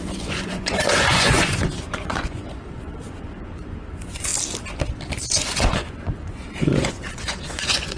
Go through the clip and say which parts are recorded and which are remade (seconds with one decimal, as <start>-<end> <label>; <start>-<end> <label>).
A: 0.0-4.3 remade; 4.3-5.2 recorded; 5.2-8.0 remade